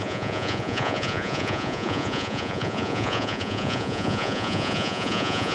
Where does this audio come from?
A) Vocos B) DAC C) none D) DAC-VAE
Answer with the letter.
A